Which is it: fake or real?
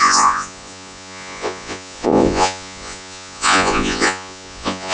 fake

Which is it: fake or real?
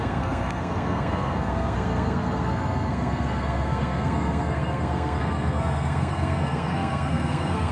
fake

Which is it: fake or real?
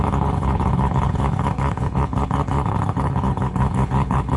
fake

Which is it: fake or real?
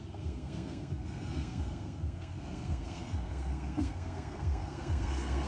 fake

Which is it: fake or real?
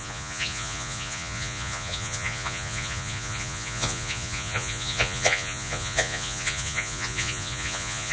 fake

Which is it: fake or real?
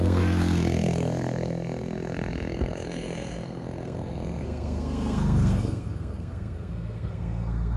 fake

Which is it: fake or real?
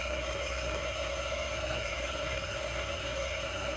fake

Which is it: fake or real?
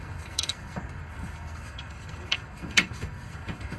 fake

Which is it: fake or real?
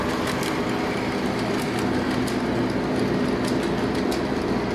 real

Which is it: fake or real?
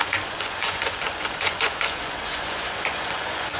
fake